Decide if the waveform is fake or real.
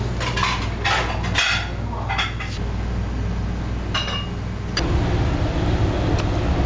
real